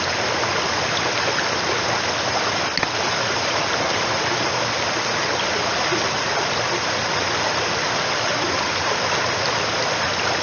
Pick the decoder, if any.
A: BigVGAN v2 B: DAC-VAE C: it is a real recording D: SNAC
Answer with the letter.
C